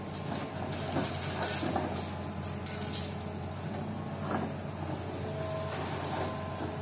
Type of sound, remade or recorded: recorded